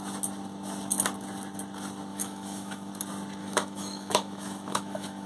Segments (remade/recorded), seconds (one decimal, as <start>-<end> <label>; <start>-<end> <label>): 0.0-2.1 recorded; 2.1-2.9 remade; 2.9-3.4 recorded; 3.4-5.3 remade